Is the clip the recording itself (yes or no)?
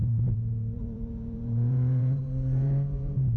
no